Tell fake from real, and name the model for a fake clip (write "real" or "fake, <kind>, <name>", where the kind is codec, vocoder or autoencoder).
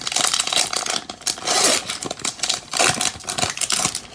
real